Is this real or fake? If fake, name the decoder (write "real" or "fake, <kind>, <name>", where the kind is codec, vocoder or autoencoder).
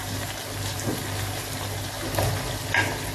real